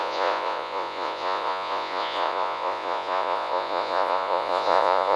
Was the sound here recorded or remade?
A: remade